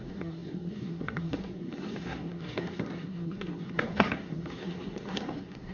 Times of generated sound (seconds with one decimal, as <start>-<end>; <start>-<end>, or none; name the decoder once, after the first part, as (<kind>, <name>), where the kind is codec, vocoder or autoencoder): 0.0-5.7 (codec, SNAC)